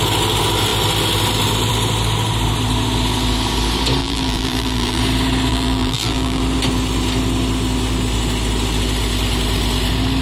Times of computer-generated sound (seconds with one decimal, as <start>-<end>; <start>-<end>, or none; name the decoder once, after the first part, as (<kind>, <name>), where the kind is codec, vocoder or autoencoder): 4.0-5.0 (vocoder, BigVGAN v2); 5.5-6.4